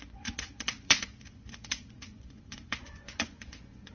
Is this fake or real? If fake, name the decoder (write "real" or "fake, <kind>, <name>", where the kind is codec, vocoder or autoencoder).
fake, vocoder, Vocos